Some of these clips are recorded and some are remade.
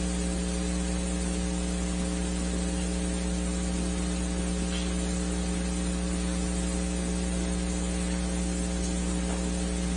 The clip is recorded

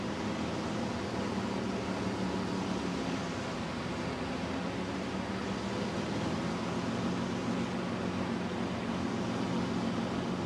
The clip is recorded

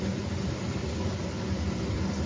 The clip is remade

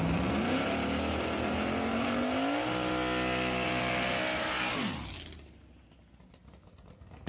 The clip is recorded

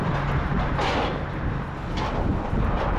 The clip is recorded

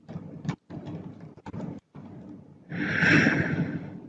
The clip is recorded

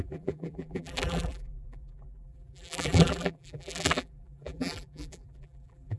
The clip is remade